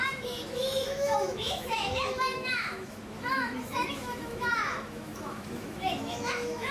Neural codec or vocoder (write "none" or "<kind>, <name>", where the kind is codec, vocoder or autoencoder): autoencoder, DAC-VAE